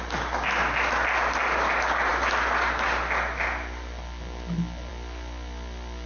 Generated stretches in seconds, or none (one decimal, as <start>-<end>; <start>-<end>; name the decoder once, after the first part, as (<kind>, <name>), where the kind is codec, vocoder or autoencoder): none